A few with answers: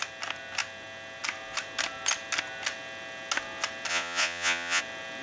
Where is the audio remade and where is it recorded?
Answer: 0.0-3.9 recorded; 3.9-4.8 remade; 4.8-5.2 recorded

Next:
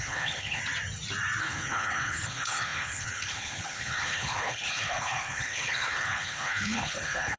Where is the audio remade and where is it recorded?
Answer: 0.0-0.6 remade; 0.6-1.4 recorded; 1.4-7.4 remade

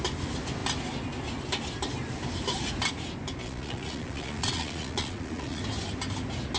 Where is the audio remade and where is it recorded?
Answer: 0.0-3.4 recorded; 3.4-5.6 remade; 5.6-6.6 recorded